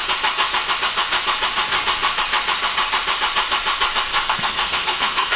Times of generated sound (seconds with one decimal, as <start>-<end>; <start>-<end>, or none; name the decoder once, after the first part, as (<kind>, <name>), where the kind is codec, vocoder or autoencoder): 4.1-5.4 (codec, SNAC)